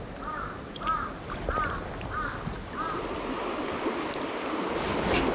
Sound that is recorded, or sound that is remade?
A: recorded